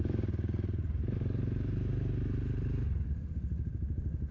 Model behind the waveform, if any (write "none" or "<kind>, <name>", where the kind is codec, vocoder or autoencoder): none